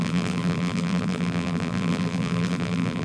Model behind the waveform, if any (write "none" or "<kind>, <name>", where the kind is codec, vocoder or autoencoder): vocoder, BigVGAN v2